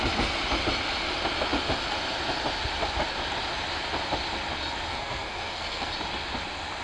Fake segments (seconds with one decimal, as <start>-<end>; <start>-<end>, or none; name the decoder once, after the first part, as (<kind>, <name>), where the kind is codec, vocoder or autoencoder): 4.9-5.9 (codec, SNAC)